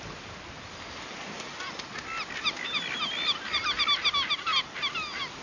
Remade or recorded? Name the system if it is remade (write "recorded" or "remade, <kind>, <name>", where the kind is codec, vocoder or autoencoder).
recorded